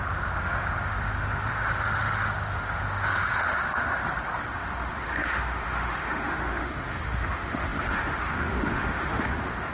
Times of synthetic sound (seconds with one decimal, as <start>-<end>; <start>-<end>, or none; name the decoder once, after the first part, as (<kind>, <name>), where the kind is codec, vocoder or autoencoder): 0.0-4.0 (autoencoder, DAC-VAE); 4.5-9.7